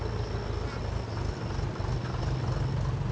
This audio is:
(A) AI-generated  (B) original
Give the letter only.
B